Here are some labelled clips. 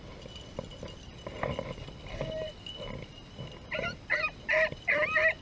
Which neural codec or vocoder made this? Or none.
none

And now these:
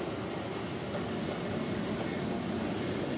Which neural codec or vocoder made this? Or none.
none